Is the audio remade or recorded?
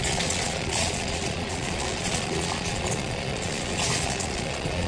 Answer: remade